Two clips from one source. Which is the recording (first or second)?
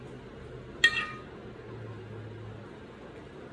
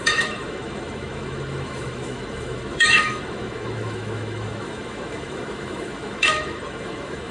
first